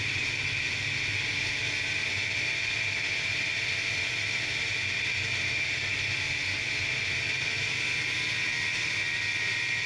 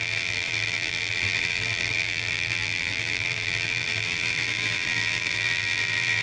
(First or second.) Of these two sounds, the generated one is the second